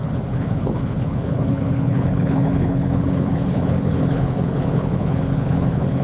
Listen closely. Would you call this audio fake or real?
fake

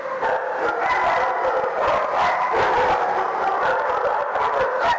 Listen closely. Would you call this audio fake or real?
real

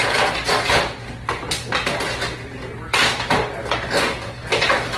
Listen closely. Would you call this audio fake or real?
real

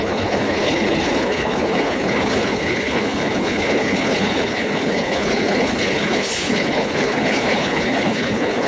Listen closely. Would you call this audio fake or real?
fake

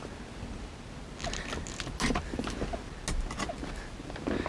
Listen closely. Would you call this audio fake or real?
real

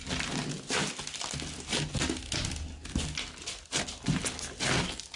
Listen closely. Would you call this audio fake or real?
real